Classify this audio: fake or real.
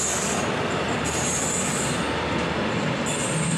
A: real